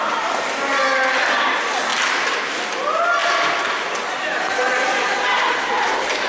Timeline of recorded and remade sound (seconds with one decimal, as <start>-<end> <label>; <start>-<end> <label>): 0.0-1.9 recorded; 1.9-2.4 remade; 2.4-3.2 recorded; 3.2-6.3 remade